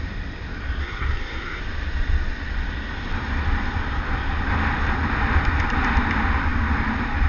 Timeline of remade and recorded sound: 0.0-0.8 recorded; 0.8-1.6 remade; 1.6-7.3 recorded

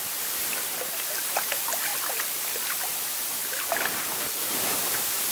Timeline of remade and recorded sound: 0.0-5.3 recorded

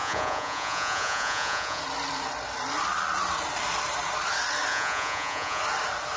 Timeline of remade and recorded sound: 0.0-1.8 remade; 1.8-4.7 recorded; 4.7-5.6 remade; 5.6-6.2 recorded

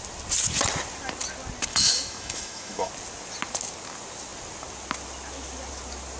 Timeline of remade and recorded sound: 0.0-1.7 recorded; 1.7-2.9 remade; 2.9-6.2 recorded